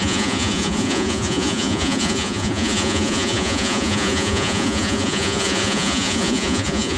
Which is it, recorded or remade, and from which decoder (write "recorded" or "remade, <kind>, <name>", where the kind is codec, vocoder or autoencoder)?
remade, vocoder, Vocos